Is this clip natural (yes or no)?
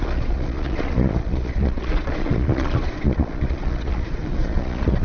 no